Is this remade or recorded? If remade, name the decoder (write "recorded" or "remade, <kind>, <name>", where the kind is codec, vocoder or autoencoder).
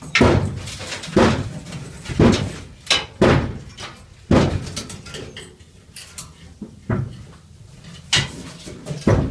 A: recorded